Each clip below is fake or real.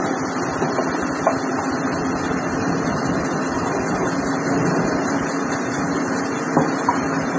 real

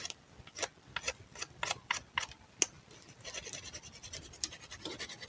real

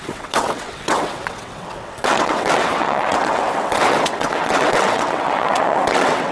fake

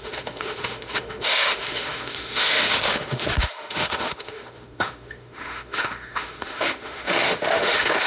fake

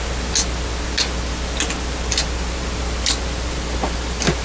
real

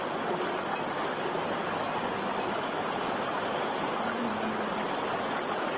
real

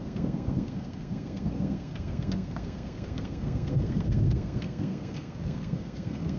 fake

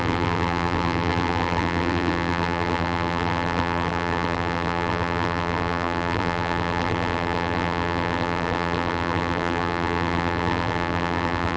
fake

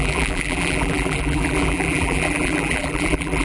fake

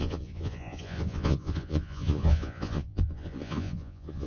fake